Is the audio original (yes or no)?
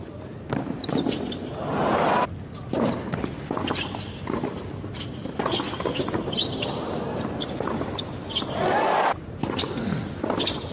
yes